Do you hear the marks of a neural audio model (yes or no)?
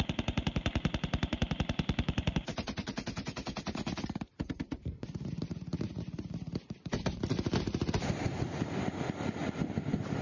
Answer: yes